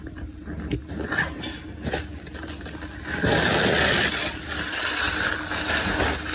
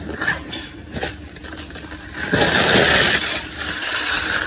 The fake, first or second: second